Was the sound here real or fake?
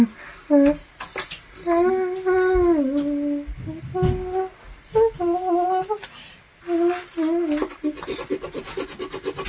real